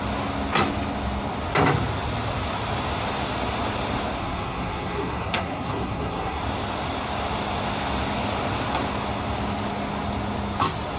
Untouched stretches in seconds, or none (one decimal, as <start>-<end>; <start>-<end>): 0.0-4.2; 6.4-11.0